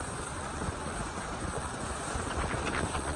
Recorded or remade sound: remade